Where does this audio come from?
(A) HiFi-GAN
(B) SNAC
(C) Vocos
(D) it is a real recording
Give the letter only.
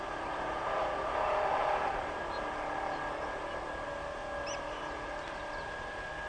D